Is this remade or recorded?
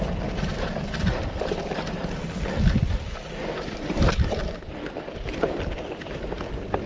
recorded